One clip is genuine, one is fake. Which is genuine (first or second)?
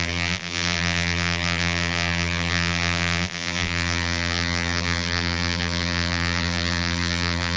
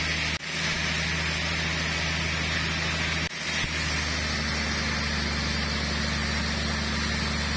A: second